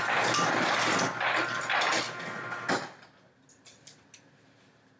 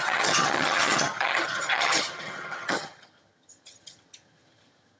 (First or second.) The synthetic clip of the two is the second